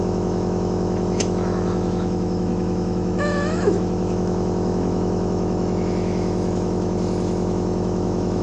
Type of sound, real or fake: fake